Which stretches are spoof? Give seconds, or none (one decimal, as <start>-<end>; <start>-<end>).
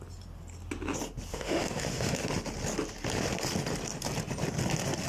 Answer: 1.3-2.2